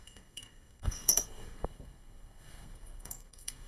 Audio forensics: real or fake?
fake